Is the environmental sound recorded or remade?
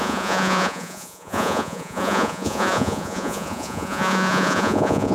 remade